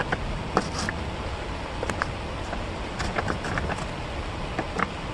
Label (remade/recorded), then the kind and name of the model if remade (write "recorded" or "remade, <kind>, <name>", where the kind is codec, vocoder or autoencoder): recorded